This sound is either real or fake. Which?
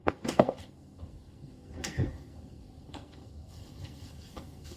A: fake